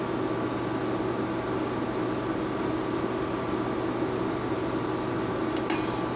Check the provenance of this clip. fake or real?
real